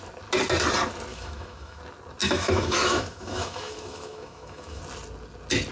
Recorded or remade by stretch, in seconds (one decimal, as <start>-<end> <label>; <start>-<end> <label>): 0.0-1.1 recorded; 1.1-1.8 remade; 1.8-2.2 recorded; 2.2-4.8 remade; 4.8-5.7 recorded